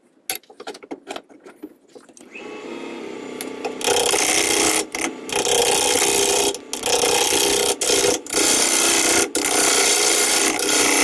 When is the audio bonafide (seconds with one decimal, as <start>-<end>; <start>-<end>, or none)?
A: 0.0-11.0